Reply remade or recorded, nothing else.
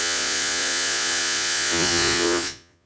remade